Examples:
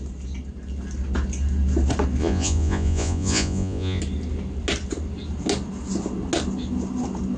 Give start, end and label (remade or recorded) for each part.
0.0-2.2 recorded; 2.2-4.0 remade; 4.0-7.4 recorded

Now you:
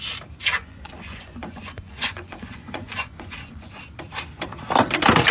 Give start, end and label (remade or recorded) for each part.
0.0-0.6 recorded; 0.6-3.8 remade; 3.8-5.3 recorded

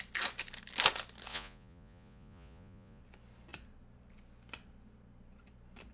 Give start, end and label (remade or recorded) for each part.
0.0-1.3 recorded; 1.3-3.0 remade; 3.0-5.9 recorded

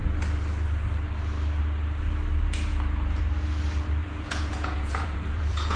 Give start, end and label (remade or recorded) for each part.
0.0-2.7 recorded; 2.7-3.2 remade; 3.2-4.0 recorded; 4.0-5.8 remade

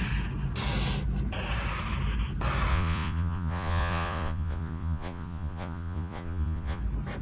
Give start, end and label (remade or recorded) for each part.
0.0-2.7 recorded; 2.7-6.8 remade; 6.8-7.2 recorded